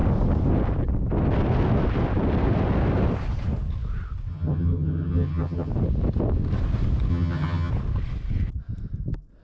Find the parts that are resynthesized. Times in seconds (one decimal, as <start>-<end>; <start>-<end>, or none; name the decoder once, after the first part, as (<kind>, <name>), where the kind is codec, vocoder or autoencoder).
4.3-5.7 (vocoder, HiFi-GAN); 7.1-7.7